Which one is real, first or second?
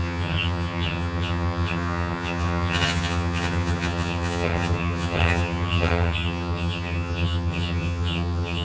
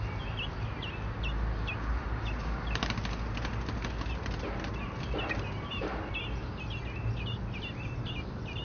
second